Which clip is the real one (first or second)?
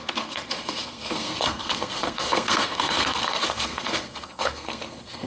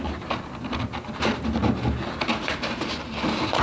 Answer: second